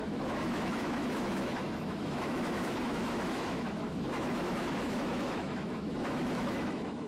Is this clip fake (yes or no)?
yes